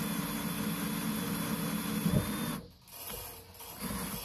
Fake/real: real